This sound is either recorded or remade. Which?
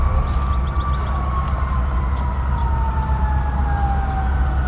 recorded